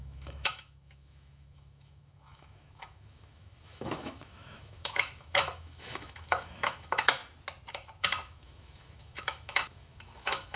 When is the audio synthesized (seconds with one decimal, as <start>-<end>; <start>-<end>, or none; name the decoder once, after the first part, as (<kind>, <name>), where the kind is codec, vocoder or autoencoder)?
0.0-7.2 (autoencoder, DAC-VAE); 7.7-10.6